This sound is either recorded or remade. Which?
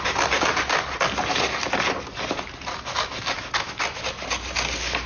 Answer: recorded